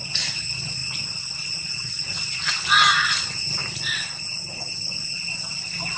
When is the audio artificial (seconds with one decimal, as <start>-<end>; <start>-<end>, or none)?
none